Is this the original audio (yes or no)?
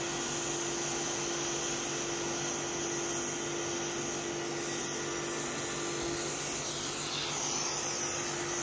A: yes